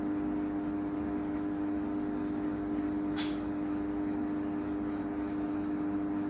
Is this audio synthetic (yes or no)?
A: no